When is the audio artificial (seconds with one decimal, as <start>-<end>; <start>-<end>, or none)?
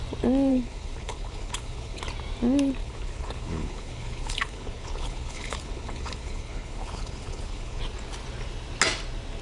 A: 0.5-2.0; 2.8-7.8